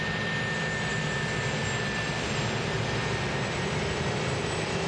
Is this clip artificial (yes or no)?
no